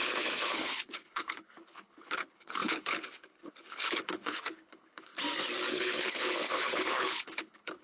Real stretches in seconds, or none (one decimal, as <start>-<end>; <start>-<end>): 5.1-5.7